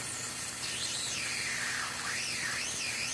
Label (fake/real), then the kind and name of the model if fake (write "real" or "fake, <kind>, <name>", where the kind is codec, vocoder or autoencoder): fake, vocoder, BigVGAN v2